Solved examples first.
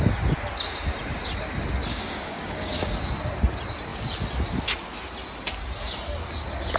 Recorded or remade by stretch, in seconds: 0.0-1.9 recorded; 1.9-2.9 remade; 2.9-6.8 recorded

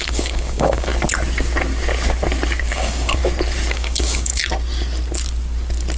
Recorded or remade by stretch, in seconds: 0.0-0.9 remade; 0.9-2.7 recorded; 2.7-3.2 remade; 3.2-3.7 recorded; 3.7-4.4 remade; 4.4-6.0 recorded